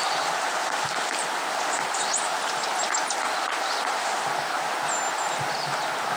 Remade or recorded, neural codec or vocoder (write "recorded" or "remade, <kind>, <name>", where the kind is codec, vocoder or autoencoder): recorded